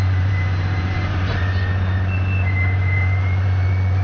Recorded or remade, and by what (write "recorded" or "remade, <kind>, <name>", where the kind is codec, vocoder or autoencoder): remade, vocoder, Vocos